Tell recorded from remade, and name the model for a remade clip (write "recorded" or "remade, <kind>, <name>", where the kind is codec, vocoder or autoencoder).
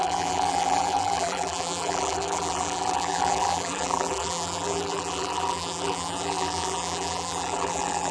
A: remade, vocoder, BigVGAN v2